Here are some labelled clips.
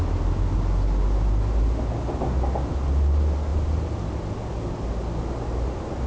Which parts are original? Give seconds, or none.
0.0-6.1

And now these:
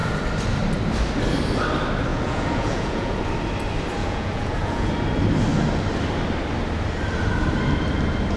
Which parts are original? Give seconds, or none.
0.0-2.1; 3.2-4.0; 4.9-8.4